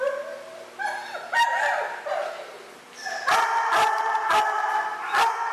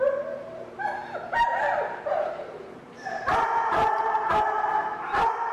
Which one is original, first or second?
first